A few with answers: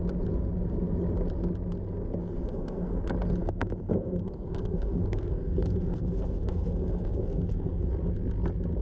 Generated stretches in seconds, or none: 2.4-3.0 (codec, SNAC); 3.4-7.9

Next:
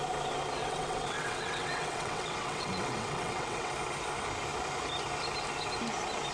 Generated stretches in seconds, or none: 0.6-3.7 (vocoder, WaveNeXt)